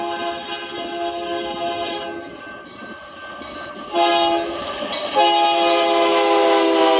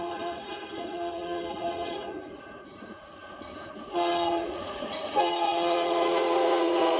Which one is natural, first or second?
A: first